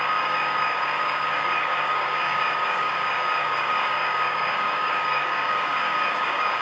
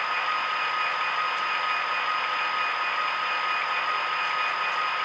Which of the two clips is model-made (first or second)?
first